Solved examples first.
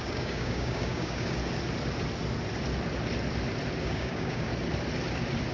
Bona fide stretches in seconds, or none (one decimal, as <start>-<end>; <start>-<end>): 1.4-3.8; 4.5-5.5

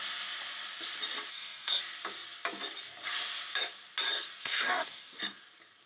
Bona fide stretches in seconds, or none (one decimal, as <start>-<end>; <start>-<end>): 0.0-1.3; 1.8-4.4; 5.2-5.9

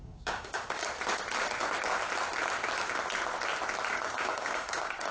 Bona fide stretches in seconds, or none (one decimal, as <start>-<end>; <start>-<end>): 0.8-3.9

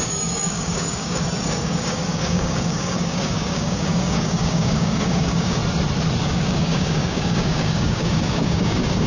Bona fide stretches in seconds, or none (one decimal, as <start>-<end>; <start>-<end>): 5.6-6.2

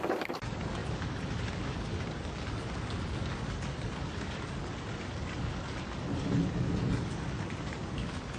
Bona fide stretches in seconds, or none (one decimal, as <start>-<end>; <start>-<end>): none

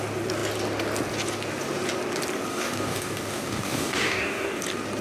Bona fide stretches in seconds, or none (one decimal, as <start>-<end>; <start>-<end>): 0.0-2.5; 4.6-5.0